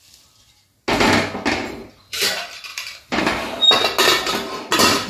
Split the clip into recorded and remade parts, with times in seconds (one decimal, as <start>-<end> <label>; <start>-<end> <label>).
0.0-1.6 recorded; 1.6-2.2 remade; 2.2-2.7 recorded; 2.7-3.2 remade; 3.2-5.1 recorded